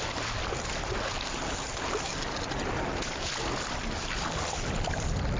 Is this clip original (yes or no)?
yes